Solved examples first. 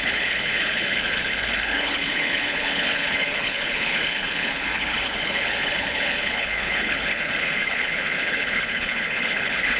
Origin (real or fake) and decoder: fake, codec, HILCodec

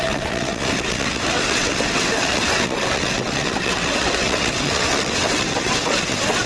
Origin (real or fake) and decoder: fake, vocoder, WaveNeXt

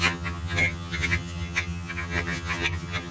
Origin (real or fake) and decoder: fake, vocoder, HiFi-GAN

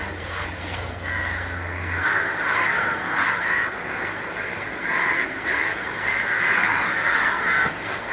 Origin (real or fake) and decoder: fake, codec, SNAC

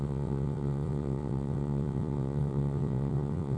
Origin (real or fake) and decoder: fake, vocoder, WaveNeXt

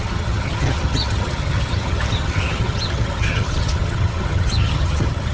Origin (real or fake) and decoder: fake, vocoder, HiFi-GAN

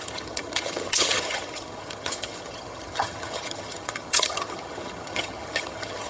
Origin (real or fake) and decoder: fake, vocoder, HiFi-GAN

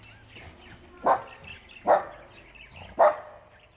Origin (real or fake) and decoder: real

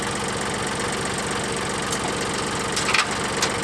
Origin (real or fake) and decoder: real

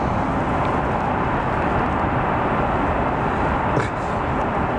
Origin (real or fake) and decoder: real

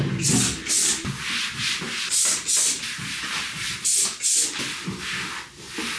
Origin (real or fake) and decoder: real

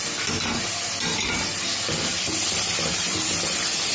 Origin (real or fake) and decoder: real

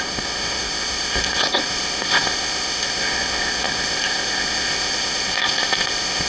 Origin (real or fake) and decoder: fake, codec, ZipCodec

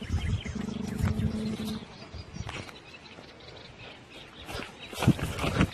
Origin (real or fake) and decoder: real